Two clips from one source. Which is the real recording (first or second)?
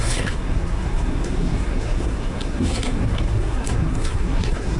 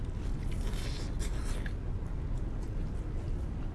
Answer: second